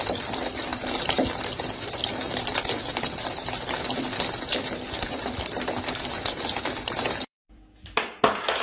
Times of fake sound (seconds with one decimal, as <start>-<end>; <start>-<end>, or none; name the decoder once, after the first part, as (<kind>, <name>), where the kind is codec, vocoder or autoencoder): 0.0-8.6 (vocoder, BigVGAN v2)